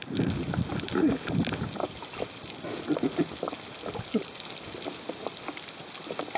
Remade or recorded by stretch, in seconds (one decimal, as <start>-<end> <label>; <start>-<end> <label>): 0.0-0.7 remade; 0.7-6.4 recorded